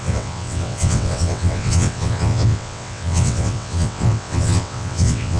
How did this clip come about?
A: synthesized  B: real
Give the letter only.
A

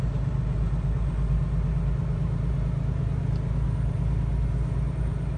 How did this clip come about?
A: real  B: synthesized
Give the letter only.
A